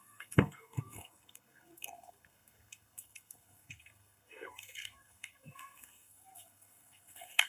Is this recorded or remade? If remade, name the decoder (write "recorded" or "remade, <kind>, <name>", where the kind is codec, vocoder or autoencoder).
remade, codec, SNAC